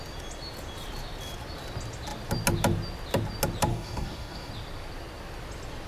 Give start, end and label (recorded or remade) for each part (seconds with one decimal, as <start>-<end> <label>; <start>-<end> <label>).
0.0-3.7 recorded; 3.7-4.5 remade; 4.5-5.9 recorded